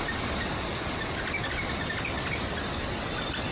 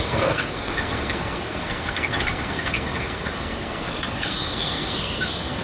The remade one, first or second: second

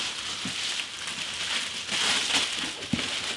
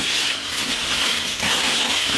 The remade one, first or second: second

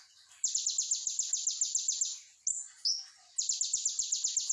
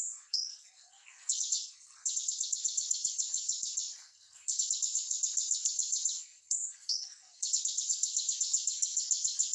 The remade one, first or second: second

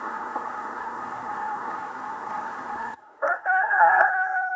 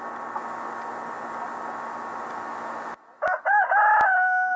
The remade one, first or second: first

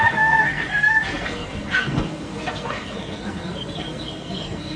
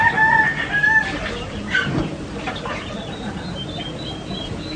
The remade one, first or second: first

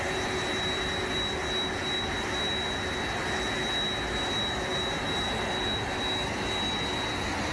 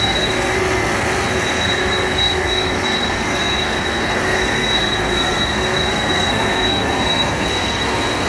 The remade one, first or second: second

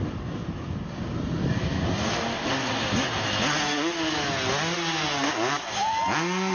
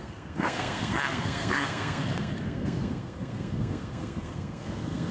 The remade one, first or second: second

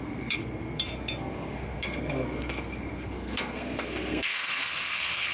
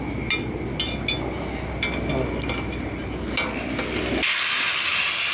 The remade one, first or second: first